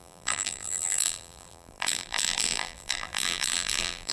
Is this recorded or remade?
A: remade